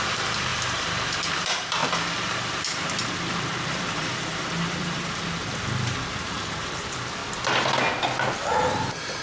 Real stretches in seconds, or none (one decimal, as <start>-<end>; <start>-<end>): 7.2-8.6